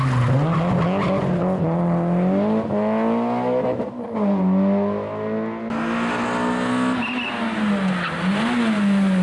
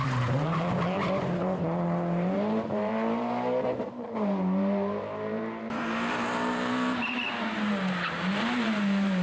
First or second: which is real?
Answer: first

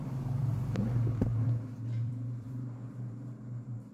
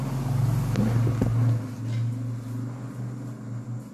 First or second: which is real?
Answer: second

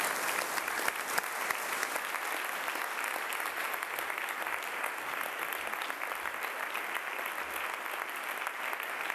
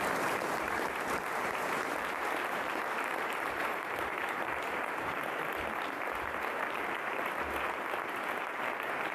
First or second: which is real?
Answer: first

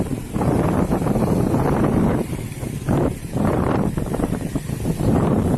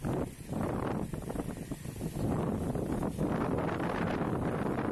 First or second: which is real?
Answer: second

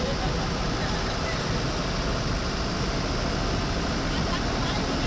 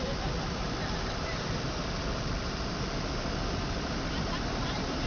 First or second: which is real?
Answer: first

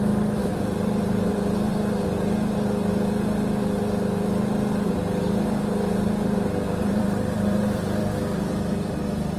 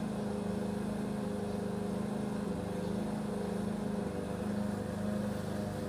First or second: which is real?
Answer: second